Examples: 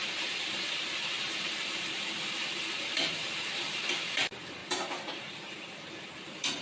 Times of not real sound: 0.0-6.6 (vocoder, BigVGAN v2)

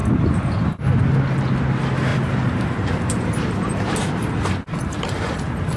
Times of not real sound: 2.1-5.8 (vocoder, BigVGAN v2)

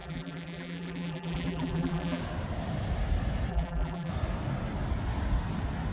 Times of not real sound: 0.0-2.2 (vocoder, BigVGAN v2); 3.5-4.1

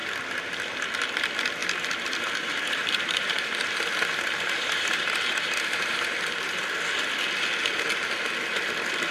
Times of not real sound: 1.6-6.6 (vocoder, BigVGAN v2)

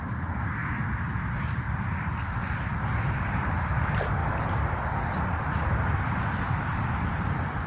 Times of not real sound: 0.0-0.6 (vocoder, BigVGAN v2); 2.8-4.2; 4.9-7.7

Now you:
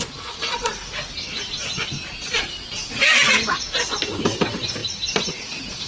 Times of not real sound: 0.0-0.7 (vocoder, BigVGAN v2); 4.2-5.9

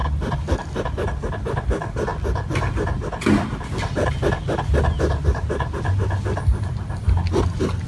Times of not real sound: none